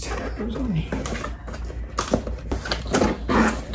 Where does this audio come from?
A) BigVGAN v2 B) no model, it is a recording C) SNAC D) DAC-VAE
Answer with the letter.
B